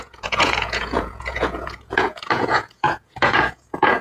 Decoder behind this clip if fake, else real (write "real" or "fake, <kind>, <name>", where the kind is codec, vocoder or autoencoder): fake, vocoder, Vocos